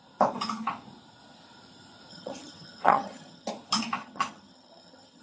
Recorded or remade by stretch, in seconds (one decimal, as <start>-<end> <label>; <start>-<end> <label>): 0.0-2.1 recorded; 2.1-3.5 remade; 3.5-4.0 recorded; 4.0-5.2 remade